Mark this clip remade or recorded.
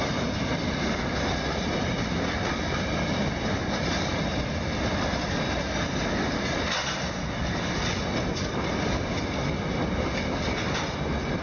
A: recorded